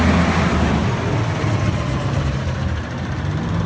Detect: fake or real real